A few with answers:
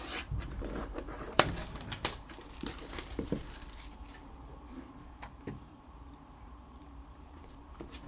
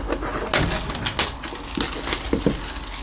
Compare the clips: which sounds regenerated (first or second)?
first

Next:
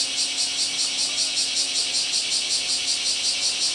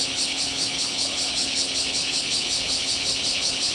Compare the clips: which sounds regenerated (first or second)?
second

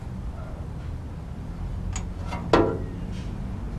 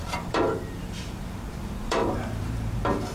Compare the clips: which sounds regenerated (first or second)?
second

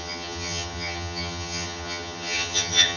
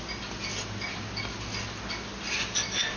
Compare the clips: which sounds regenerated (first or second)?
first